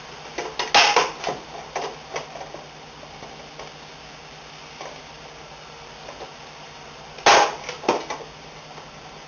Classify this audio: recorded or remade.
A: recorded